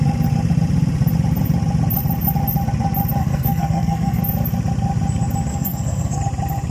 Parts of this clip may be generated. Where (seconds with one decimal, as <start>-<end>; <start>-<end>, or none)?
3.2-4.2; 5.5-6.2